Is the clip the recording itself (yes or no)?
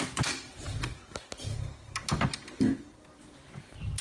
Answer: yes